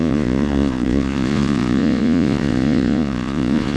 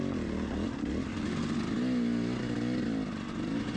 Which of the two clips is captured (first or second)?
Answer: second